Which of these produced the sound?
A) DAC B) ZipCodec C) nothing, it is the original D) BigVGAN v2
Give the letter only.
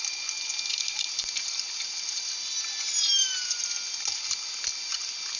C